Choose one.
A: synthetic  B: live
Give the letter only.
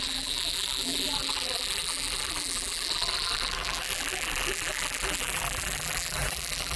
A